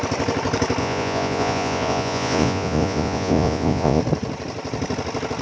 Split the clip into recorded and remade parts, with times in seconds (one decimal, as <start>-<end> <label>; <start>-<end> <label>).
0.0-0.8 recorded; 0.8-4.0 remade; 4.0-5.4 recorded